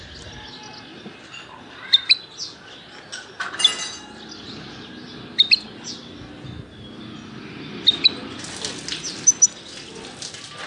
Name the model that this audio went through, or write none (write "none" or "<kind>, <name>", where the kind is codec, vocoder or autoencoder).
none